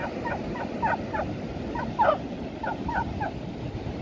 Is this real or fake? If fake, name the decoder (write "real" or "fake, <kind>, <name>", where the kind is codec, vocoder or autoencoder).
real